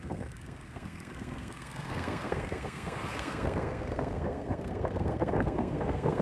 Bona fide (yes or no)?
no